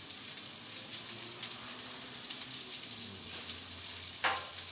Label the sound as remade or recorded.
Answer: recorded